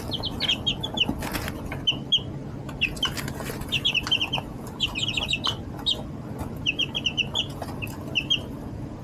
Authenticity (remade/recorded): recorded